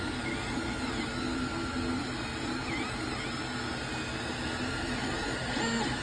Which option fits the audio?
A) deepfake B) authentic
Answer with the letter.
B